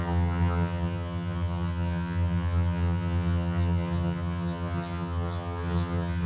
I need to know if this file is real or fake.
fake